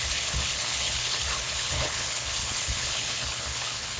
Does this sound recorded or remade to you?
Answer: remade